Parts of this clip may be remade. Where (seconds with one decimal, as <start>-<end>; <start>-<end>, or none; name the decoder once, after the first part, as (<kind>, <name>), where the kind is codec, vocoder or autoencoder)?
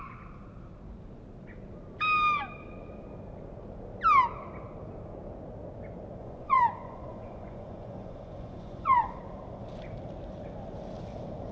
6.2-9.2 (vocoder, Vocos)